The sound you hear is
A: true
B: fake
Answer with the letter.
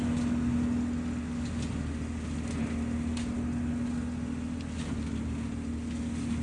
A